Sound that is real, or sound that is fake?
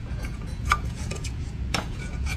fake